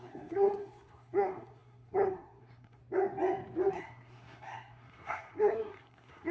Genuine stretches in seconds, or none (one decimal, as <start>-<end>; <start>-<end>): 2.8-3.7

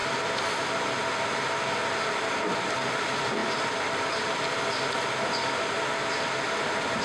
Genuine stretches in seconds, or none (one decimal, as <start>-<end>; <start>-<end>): 0.0-0.6; 3.4-6.4

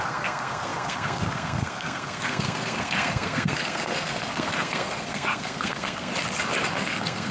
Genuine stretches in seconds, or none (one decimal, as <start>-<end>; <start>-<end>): 6.1-6.7

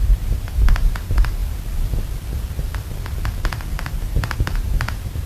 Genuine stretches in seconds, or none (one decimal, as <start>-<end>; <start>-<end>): 1.4-3.9

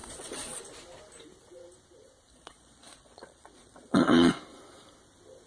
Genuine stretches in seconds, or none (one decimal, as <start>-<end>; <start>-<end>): 0.6-2.3; 4.4-5.5